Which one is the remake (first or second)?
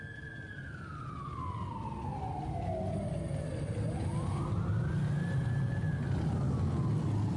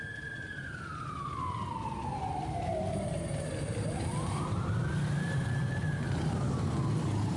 second